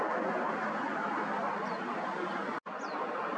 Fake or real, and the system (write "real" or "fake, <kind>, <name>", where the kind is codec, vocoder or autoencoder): real